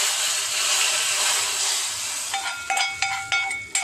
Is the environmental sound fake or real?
real